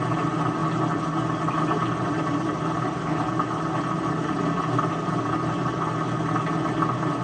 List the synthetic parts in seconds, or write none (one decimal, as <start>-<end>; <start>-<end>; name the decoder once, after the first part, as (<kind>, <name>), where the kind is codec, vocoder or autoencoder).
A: none